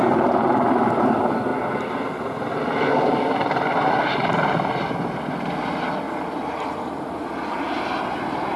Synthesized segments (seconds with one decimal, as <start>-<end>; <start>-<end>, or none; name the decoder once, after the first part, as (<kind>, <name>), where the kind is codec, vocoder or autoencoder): none